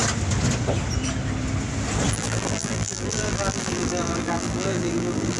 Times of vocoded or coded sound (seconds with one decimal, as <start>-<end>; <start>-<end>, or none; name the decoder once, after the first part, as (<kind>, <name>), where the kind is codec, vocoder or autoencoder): 2.1-5.4 (vocoder, BigVGAN v2)